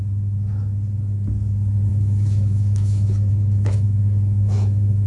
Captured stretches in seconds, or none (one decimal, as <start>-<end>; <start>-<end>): 0.0-1.9